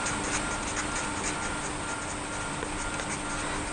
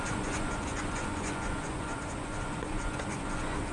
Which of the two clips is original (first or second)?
first